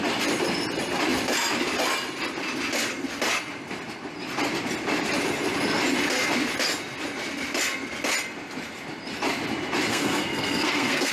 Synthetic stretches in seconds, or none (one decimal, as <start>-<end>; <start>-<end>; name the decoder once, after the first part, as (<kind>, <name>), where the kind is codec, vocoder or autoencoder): 9.9-11.1 (codec, SNAC)